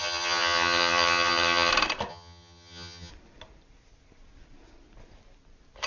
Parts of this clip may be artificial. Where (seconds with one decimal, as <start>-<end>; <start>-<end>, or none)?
0.0-1.7; 2.1-3.1